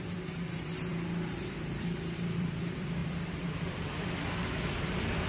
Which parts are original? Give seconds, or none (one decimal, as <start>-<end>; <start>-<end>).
none